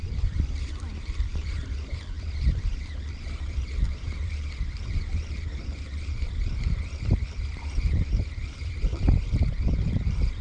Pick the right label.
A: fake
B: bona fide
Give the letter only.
A